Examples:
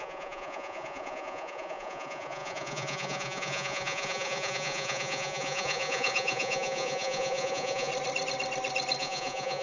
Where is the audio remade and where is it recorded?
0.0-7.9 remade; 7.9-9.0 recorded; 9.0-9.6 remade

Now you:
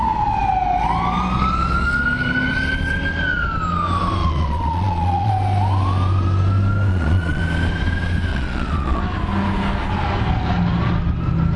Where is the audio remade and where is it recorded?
0.0-4.2 recorded; 4.2-5.3 remade; 5.3-6.9 recorded; 6.9-7.4 remade; 7.4-8.3 recorded; 8.3-9.0 remade; 9.0-11.6 recorded

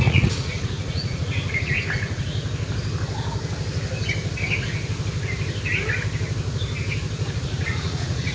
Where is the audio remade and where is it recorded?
0.0-2.3 remade; 2.3-7.3 recorded; 7.3-8.3 remade

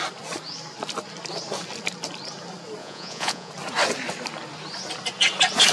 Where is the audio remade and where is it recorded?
0.0-2.8 recorded; 2.8-3.5 remade; 3.5-5.7 recorded

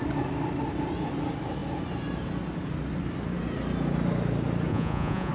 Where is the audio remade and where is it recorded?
0.0-4.7 recorded; 4.7-5.3 remade